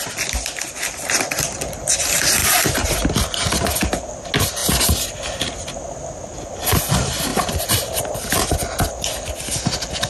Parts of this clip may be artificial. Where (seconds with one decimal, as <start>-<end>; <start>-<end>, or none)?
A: 2.4-3.1